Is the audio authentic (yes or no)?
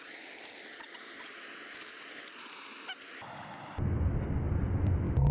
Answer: yes